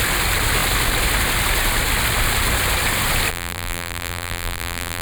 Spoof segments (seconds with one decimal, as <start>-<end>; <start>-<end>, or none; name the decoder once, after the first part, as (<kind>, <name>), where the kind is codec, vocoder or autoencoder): 3.3-5.0 (vocoder, BigVGAN v2)